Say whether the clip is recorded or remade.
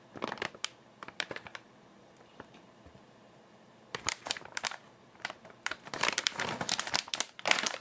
remade